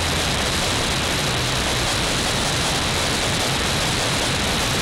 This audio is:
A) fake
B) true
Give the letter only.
A